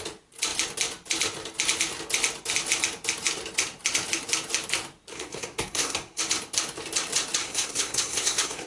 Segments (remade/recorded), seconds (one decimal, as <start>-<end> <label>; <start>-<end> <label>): 0.0-5.1 recorded; 5.1-6.2 remade; 6.2-7.4 recorded; 7.4-8.7 remade